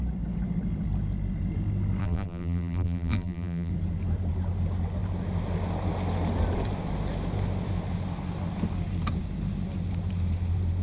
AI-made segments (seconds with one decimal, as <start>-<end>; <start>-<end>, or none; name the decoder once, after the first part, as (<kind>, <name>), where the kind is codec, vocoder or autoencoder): 2.0-3.7 (vocoder, BigVGAN v2)